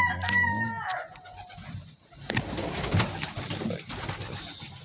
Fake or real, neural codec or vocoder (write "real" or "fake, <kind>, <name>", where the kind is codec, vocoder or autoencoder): real